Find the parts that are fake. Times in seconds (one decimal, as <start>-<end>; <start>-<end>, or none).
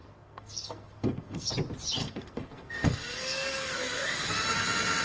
0.0-1.5; 2.0-4.3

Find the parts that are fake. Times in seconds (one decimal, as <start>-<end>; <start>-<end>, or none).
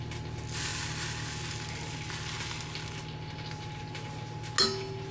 none